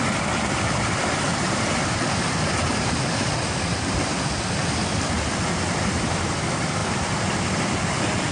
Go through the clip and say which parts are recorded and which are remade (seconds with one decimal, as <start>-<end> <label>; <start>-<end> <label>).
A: 0.0-8.3 remade

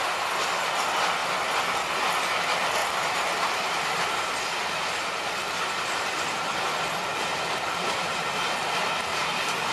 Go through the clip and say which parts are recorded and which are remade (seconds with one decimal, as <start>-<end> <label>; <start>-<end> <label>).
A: 0.0-2.8 recorded; 2.8-6.6 remade; 6.6-7.1 recorded; 7.1-8.2 remade; 8.2-9.7 recorded

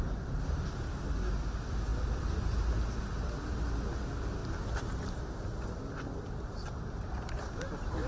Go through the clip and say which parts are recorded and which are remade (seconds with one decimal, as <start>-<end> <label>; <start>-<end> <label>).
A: 0.0-4.4 recorded; 4.4-8.1 remade

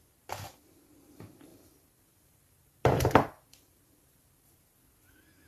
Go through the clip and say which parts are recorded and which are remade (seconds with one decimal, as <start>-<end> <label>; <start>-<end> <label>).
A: 0.0-1.5 recorded; 1.5-4.7 remade; 4.7-5.5 recorded

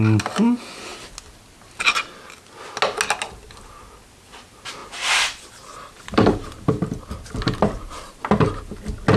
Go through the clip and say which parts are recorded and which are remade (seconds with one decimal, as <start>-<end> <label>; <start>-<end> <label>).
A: 0.0-4.8 recorded; 4.8-7.0 remade; 7.0-9.2 recorded

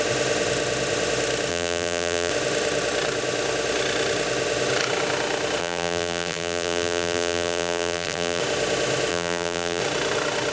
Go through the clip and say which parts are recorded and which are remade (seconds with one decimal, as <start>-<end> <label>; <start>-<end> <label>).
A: 0.0-1.5 recorded; 1.5-2.3 remade; 2.3-5.6 recorded; 5.6-8.4 remade; 8.4-9.1 recorded; 9.1-9.8 remade; 9.8-10.5 recorded